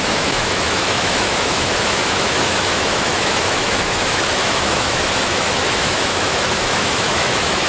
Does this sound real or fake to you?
fake